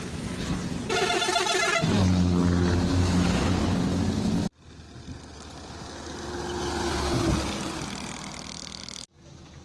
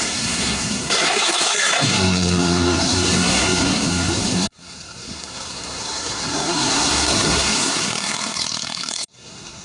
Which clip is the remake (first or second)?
second